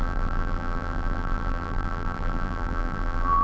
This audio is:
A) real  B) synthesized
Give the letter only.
B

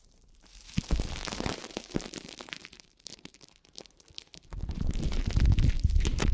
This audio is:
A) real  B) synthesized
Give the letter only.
B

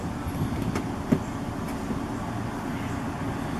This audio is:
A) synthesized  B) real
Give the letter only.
B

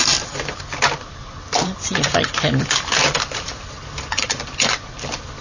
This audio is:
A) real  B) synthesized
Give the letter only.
B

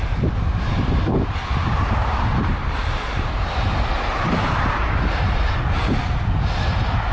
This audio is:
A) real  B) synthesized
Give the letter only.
B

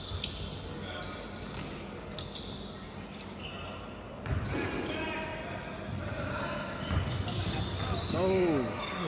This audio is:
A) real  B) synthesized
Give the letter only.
A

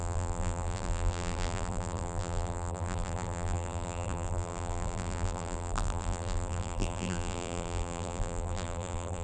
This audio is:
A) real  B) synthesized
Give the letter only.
B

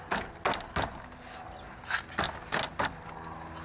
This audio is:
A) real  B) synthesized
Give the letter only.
A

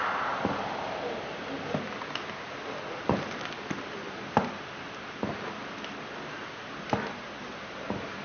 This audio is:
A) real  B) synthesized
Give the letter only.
A